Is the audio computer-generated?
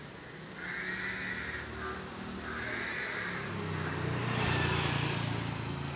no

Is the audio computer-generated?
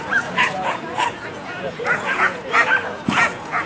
yes